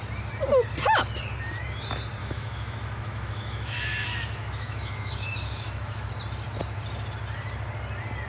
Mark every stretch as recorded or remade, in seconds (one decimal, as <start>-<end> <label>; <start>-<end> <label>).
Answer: 0.0-2.2 recorded; 2.2-6.1 remade; 6.1-8.3 recorded

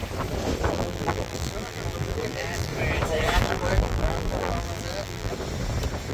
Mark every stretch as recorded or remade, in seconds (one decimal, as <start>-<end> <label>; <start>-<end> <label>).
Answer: 0.0-0.7 recorded; 0.7-2.7 remade; 2.7-3.4 recorded; 3.4-5.3 remade; 5.3-6.1 recorded

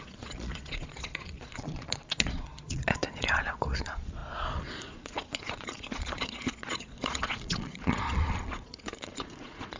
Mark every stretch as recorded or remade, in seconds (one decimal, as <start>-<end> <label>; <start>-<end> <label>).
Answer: 0.0-9.8 remade

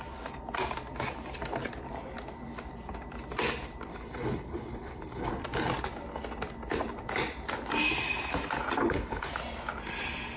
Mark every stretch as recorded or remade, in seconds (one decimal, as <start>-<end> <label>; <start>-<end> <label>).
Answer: 0.0-3.9 recorded; 3.9-5.3 remade; 5.3-8.8 recorded; 8.8-9.3 remade; 9.3-10.4 recorded